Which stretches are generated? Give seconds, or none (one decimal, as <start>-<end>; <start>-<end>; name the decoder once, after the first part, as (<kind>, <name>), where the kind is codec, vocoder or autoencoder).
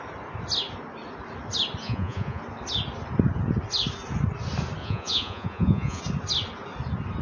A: 1.8-2.4 (vocoder, Vocos); 4.8-6.0